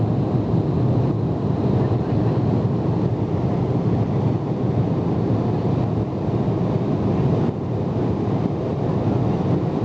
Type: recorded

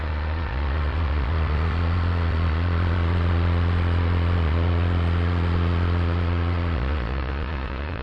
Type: remade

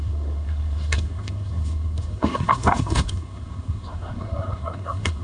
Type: remade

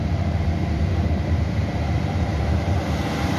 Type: remade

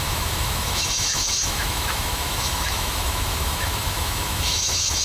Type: remade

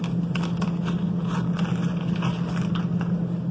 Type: recorded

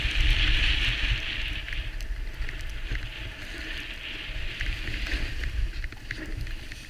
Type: remade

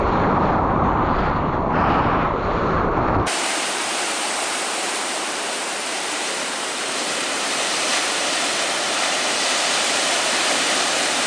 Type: remade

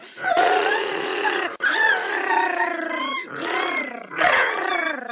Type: remade